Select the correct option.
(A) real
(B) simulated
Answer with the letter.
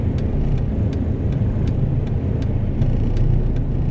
A